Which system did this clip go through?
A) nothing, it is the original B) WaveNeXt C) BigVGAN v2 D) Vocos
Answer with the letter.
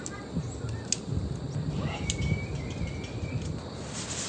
A